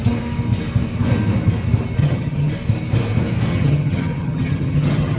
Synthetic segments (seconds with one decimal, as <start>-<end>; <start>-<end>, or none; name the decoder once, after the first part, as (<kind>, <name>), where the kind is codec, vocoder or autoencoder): 2.0-2.5 (vocoder, HiFi-GAN); 3.5-5.2